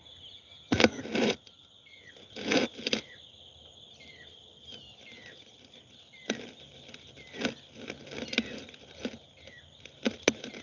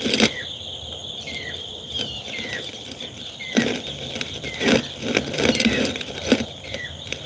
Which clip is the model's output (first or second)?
second